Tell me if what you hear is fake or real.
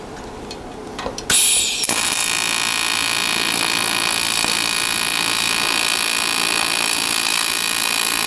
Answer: real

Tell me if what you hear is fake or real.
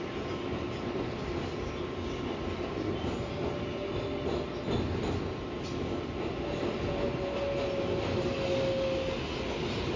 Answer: real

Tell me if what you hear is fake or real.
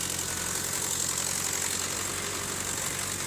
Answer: real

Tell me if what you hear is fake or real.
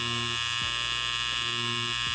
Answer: real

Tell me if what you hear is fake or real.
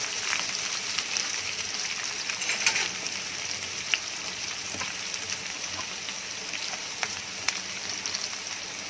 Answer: fake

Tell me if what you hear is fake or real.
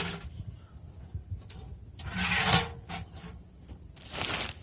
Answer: real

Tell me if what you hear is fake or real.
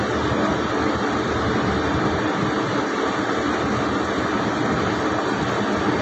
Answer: real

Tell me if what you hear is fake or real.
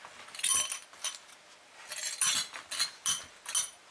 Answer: real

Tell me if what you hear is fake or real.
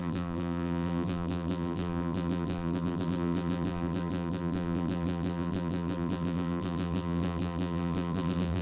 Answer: fake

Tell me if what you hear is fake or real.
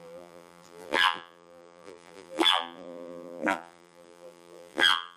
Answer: fake